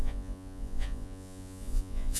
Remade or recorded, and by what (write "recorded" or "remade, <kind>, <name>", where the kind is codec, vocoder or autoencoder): remade, vocoder, Vocos